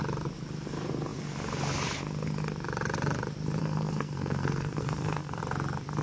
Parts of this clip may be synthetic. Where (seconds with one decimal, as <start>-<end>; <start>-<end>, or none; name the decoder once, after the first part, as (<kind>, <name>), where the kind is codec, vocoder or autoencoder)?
3.6-5.4 (codec, SNAC)

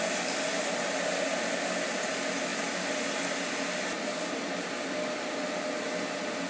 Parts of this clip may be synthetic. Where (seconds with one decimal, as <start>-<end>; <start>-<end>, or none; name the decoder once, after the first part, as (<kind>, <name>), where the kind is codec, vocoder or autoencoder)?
none

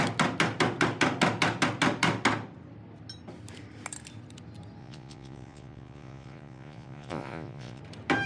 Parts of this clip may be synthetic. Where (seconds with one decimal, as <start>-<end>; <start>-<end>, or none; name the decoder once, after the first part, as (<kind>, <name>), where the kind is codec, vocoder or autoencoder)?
4.8-7.8 (vocoder, Vocos)

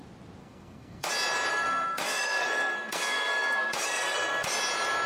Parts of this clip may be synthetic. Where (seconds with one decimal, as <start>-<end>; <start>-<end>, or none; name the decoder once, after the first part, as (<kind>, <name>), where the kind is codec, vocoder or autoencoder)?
0.4-1.1 (codec, SNAC); 1.5-4.5